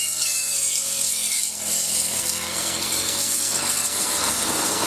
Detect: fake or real fake